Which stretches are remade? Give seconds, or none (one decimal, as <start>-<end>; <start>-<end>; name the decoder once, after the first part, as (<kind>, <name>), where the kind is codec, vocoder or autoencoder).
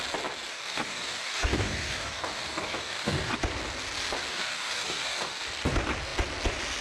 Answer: 0.5-3.3 (codec, DAC); 4.3-5.4